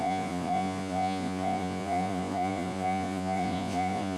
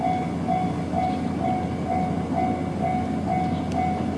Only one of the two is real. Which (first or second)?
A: second